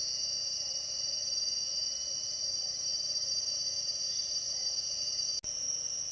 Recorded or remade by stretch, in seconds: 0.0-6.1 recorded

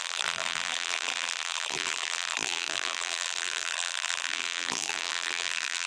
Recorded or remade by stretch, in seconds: 0.0-5.9 remade